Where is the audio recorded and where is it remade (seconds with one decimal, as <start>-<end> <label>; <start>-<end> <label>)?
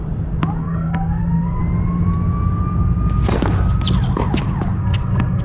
0.0-0.6 recorded; 0.6-1.6 remade; 1.6-4.8 recorded; 4.8-5.4 remade